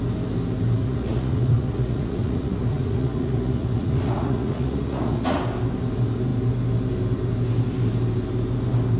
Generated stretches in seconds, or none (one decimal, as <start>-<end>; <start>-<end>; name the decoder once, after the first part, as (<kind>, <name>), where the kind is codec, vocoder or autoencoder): 0.8-5.4 (vocoder, Vocos)